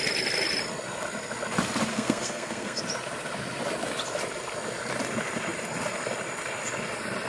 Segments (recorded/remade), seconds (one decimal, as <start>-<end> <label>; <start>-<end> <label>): 0.0-1.9 recorded; 1.9-2.8 remade; 2.8-7.3 recorded